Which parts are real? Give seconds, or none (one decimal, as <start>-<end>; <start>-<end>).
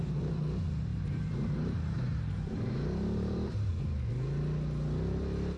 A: 0.0-0.9; 3.7-5.6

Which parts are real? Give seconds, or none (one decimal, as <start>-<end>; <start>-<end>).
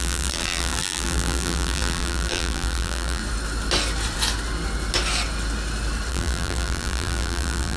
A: 3.2-6.1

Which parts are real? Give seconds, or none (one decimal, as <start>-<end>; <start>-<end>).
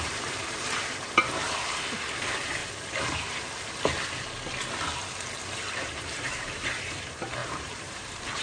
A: 2.6-5.7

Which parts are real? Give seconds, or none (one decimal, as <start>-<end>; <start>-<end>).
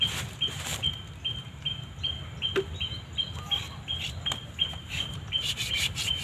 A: 0.7-4.4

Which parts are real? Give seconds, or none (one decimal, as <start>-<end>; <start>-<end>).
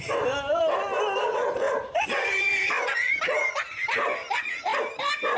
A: 0.0-1.4; 2.7-5.4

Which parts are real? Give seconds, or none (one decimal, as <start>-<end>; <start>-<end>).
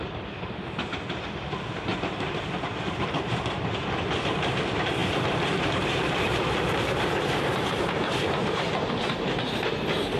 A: 0.0-1.9; 3.9-5.0; 8.9-10.2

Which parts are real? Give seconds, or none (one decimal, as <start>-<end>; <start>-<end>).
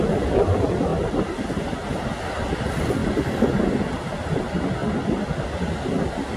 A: 0.0-6.4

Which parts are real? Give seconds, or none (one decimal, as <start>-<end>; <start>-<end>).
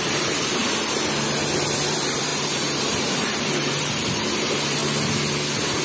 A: 0.6-1.9; 4.8-5.8